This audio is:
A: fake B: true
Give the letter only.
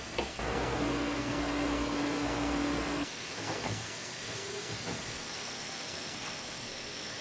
A